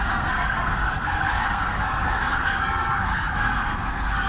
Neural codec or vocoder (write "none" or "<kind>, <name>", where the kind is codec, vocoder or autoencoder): codec, SNAC